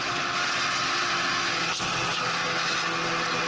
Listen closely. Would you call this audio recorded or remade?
recorded